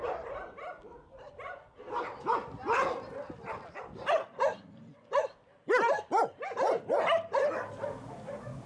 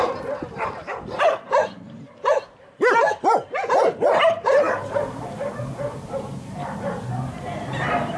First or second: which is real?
first